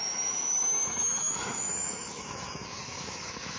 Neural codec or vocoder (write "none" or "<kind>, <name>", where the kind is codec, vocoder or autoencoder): autoencoder, DAC-VAE